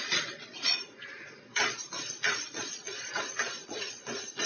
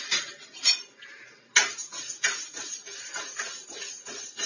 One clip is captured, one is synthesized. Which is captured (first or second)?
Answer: second